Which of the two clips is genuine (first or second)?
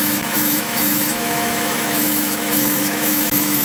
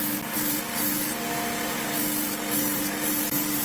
second